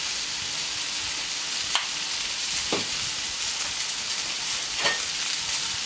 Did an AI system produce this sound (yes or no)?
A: no